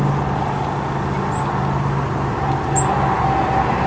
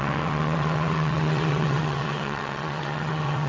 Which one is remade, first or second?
second